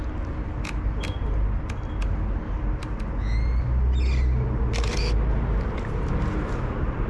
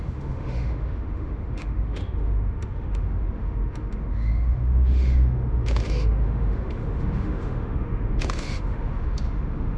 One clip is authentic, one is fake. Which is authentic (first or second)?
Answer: first